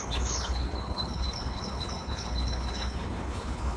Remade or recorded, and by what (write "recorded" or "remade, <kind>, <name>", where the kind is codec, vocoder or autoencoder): remade, codec, HILCodec